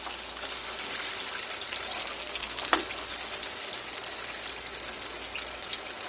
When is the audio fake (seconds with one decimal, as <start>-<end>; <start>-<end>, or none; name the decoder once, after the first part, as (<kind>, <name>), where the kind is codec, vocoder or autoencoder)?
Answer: 2.0-2.8 (codec, SNAC)